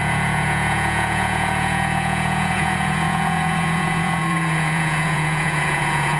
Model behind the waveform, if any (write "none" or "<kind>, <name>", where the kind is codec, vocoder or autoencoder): vocoder, Vocos